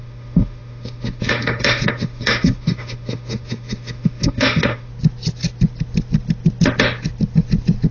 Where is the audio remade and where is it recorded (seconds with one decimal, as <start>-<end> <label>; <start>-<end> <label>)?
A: 0.0-4.9 remade; 4.9-7.9 recorded

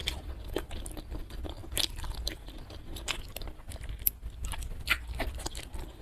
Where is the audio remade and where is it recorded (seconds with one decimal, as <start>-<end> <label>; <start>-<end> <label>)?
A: 0.0-6.0 recorded

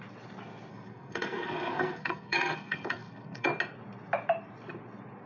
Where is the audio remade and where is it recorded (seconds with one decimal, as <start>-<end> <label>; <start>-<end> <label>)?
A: 0.0-0.7 recorded; 0.7-3.5 remade; 3.5-5.3 recorded

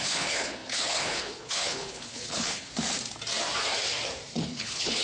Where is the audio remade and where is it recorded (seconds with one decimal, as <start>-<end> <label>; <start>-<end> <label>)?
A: 0.0-2.7 remade; 2.7-4.4 recorded; 4.4-5.0 remade

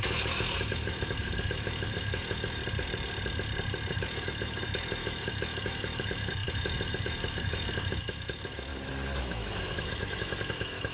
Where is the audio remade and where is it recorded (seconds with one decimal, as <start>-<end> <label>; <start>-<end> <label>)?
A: 0.0-2.6 remade; 2.6-3.9 recorded; 3.9-8.7 remade; 8.7-9.2 recorded; 9.2-10.9 remade

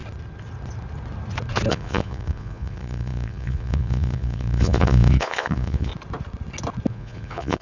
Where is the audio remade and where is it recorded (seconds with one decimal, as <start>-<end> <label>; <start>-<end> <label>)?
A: 0.0-1.7 recorded; 1.7-5.9 remade; 5.9-6.9 recorded; 6.9-7.6 remade

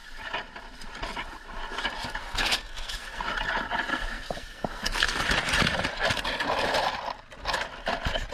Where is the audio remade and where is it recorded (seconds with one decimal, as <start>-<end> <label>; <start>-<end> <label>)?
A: 0.0-2.2 recorded; 2.2-3.2 remade; 3.2-3.9 recorded; 3.9-5.2 remade; 5.2-8.3 recorded